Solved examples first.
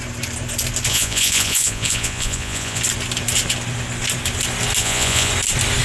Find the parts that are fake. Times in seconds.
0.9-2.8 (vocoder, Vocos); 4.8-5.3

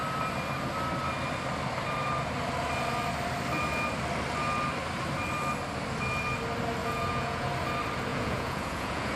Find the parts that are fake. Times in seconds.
6.8-7.5 (vocoder, Vocos); 8.1-9.2

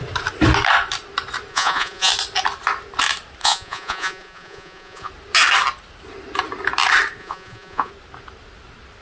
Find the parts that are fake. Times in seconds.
1.5-2.1 (vocoder, Vocos); 3.4-5.1; 7.2-7.9

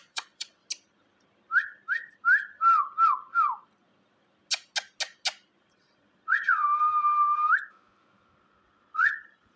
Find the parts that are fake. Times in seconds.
0.0-0.6 (vocoder, Vocos); 5.6-6.6; 8.4-9.6